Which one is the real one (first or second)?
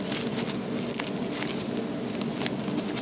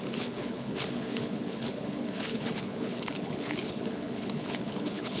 first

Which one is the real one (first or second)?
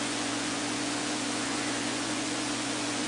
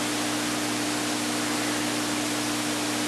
second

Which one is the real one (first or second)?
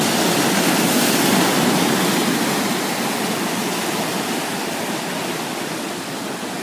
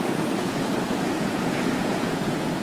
first